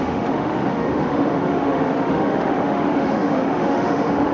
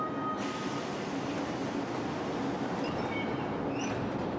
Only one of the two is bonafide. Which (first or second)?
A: second